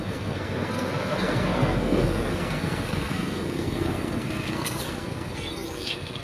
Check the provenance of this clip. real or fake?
fake